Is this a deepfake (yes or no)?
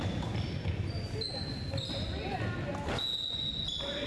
no